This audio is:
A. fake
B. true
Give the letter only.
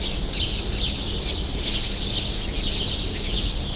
B